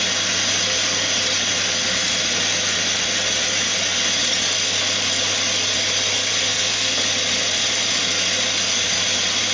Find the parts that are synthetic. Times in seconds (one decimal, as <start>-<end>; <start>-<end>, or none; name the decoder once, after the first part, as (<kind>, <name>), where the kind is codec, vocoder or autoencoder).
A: 6.5-7.0 (codec, SNAC)